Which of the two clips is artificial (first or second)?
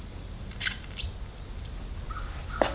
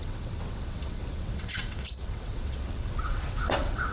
second